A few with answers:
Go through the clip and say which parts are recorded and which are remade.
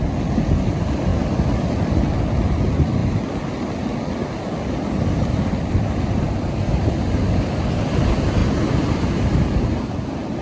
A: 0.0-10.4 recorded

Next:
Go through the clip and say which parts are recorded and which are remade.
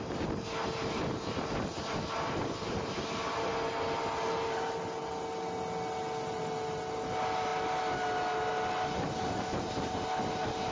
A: 0.0-10.7 recorded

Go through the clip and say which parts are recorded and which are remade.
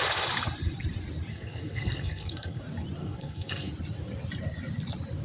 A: 0.0-1.3 recorded; 1.3-2.6 remade; 2.6-3.0 recorded; 3.0-3.7 remade; 3.7-5.2 recorded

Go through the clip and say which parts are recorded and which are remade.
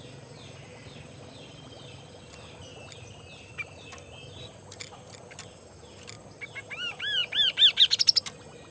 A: 0.0-8.7 recorded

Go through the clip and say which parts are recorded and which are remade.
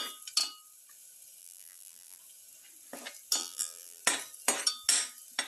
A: 0.0-1.4 recorded; 1.4-2.2 remade; 2.2-3.4 recorded; 3.4-4.0 remade; 4.0-5.5 recorded